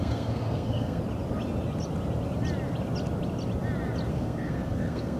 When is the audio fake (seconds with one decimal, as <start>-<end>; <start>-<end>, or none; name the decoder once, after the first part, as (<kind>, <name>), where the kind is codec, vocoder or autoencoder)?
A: 0.0-1.0 (codec, SNAC); 4.1-5.2

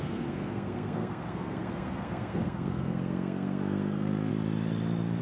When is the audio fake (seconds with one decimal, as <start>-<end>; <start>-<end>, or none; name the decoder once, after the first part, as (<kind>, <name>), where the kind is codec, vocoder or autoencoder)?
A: 0.0-4.3 (codec, SNAC)

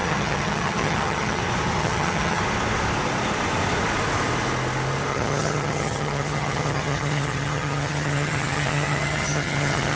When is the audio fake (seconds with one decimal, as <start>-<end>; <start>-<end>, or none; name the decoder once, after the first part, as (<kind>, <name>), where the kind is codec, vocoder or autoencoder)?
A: 0.0-1.4 (vocoder, HiFi-GAN); 1.8-2.4; 5.1-10.0

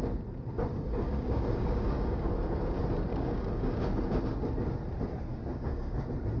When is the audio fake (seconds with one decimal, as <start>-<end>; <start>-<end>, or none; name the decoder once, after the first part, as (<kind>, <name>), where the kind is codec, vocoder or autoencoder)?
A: 0.7-2.3 (codec, DAC); 3.1-4.2; 5.3-6.0

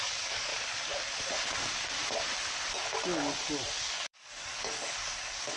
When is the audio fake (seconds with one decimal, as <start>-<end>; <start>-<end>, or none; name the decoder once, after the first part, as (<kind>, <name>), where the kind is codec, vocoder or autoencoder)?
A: 0.0-0.5 (codec, DAC); 3.9-5.6

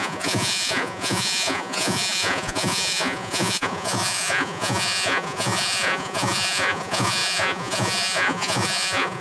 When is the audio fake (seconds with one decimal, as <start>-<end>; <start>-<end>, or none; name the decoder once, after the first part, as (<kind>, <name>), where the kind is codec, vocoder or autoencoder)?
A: 0.0-9.2 (vocoder, Vocos)

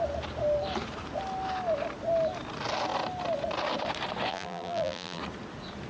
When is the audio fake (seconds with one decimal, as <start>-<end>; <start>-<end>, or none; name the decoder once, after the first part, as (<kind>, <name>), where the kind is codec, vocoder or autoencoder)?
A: 4.3-5.2 (vocoder, BigVGAN v2)